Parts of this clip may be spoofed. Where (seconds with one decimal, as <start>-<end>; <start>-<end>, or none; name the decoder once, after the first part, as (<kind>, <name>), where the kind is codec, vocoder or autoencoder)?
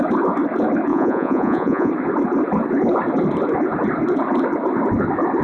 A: 0.9-1.9 (vocoder, Vocos)